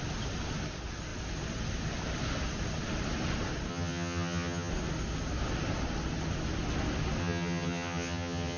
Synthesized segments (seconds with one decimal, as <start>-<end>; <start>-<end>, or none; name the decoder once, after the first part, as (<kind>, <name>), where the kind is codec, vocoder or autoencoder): 3.7-4.7 (vocoder, HiFi-GAN); 7.2-8.6